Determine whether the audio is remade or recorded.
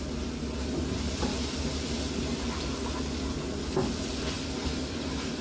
recorded